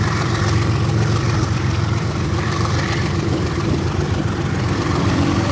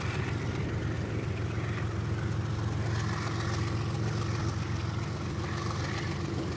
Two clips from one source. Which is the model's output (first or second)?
first